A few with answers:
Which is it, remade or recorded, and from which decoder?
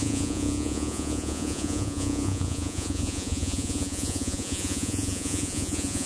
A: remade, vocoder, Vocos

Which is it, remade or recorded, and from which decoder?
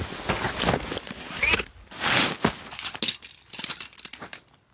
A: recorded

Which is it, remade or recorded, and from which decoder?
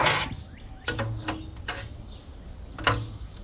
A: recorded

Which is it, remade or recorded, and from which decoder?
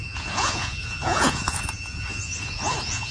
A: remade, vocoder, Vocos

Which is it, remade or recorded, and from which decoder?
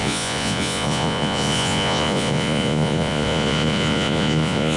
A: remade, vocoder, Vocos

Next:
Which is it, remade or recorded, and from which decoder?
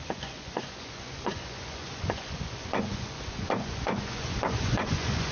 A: remade, vocoder, Vocos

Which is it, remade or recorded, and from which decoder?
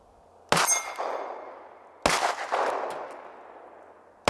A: recorded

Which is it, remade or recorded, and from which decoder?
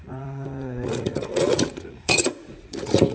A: remade, vocoder, Vocos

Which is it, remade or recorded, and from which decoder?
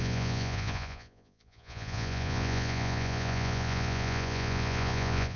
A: remade, vocoder, Vocos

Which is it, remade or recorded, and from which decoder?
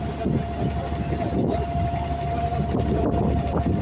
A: recorded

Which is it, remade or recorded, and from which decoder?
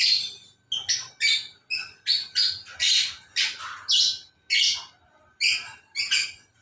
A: recorded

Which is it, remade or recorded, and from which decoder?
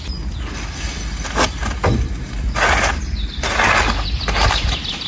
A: recorded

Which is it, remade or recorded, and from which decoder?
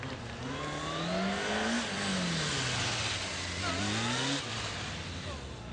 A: recorded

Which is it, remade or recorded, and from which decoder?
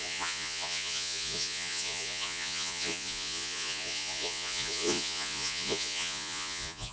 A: remade, vocoder, Vocos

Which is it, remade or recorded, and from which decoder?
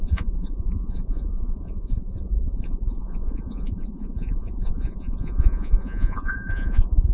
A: remade, vocoder, Vocos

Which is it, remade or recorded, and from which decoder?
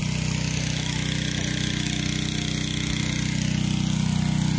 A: recorded